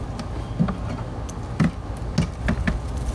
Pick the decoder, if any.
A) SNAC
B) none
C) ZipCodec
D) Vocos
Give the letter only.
B